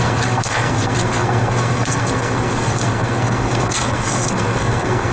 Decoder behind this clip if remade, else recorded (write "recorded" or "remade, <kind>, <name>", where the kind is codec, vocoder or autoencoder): remade, codec, SNAC